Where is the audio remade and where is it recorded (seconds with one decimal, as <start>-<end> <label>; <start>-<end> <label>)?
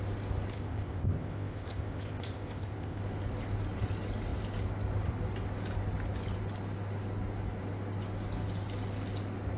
0.0-0.5 recorded; 0.5-3.0 remade; 3.0-9.6 recorded